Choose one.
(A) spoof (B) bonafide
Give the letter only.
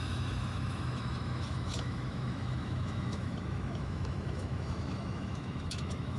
A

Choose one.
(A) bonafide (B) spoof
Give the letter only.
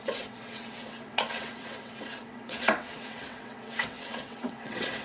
B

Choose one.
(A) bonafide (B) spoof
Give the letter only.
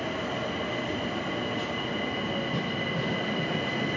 A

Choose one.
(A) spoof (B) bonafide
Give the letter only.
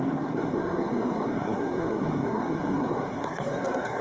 A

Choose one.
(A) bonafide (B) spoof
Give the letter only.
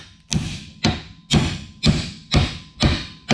A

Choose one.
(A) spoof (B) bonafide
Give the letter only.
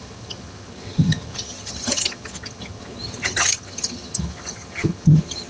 A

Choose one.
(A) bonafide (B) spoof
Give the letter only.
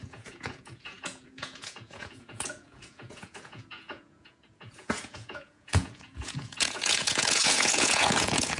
B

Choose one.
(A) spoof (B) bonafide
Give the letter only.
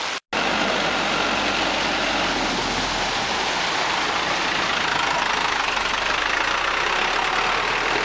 B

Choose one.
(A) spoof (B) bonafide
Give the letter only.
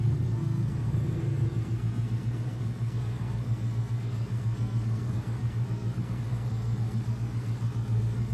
A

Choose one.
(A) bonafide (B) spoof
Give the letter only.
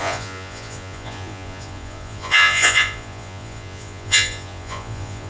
B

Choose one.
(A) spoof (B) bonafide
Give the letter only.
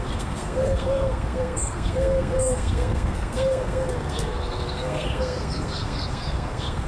A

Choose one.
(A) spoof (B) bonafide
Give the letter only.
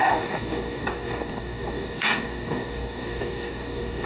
A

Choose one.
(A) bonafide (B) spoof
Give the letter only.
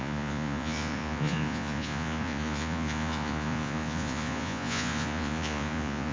B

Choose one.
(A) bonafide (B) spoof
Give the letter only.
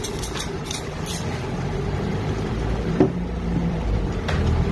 B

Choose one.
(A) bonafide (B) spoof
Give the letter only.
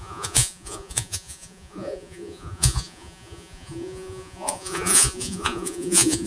B